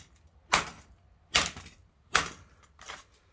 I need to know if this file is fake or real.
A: real